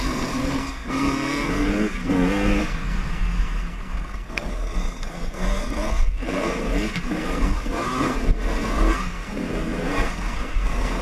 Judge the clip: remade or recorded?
remade